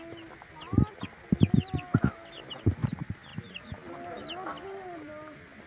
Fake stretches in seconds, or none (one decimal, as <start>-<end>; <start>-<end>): none